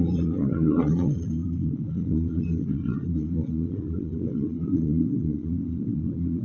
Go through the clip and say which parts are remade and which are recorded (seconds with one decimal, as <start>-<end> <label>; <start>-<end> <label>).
0.0-6.4 remade